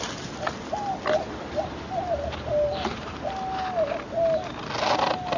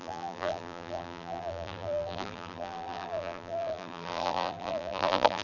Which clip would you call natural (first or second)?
first